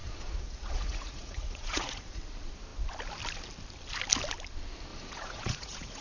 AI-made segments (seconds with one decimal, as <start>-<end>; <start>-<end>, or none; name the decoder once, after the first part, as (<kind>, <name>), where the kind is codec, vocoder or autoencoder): 0.0-2.2 (vocoder, Vocos); 4.9-6.0